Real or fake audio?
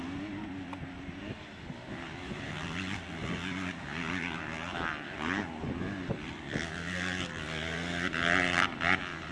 real